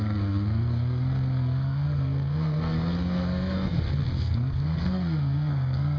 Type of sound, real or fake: fake